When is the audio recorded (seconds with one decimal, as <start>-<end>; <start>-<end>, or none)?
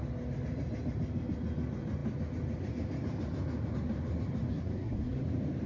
0.0-4.5; 5.2-5.7